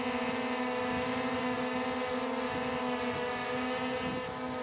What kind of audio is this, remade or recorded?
recorded